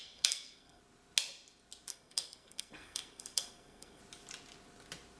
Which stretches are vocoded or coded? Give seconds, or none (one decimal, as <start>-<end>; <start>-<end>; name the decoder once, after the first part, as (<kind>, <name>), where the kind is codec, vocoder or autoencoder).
0.0-0.8 (codec, SNAC); 1.9-4.0

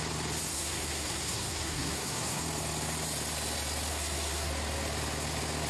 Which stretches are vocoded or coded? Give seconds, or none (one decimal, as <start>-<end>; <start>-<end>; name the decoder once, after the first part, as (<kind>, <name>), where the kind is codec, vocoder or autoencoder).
0.5-2.4 (codec, SNAC); 3.9-4.5

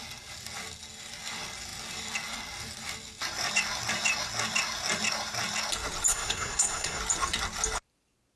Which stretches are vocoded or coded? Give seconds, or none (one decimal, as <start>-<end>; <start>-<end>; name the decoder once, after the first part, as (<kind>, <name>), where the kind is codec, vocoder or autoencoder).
6.1-7.0 (codec, SNAC)

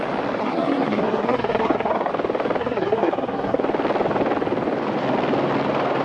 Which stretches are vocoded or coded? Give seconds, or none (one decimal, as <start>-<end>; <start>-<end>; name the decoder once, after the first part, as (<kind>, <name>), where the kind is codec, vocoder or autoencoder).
0.4-2.1 (codec, SNAC); 2.6-3.6

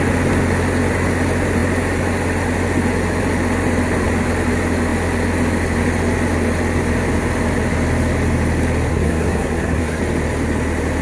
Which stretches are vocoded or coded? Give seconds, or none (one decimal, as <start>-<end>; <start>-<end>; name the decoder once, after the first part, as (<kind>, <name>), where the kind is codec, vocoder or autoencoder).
8.9-10.0 (codec, SNAC)

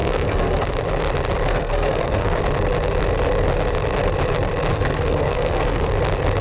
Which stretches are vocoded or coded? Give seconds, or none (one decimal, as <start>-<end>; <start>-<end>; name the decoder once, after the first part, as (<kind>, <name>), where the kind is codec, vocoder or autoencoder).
0.0-0.7 (codec, SNAC); 1.5-2.4; 4.7-5.9

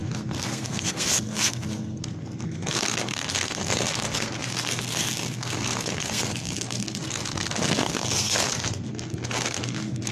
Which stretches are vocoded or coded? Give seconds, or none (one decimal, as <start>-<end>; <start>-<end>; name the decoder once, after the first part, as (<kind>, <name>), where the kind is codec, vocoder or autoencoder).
0.0-10.1 (codec, SNAC)